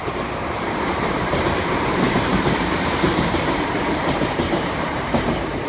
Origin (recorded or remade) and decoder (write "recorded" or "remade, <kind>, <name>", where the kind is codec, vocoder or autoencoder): remade, vocoder, BigVGAN v2